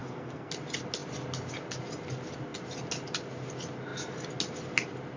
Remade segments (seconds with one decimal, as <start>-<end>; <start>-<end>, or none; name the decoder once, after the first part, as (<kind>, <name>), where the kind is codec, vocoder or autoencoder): 0.0-0.5 (codec, SNAC)